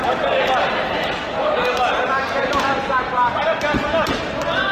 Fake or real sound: real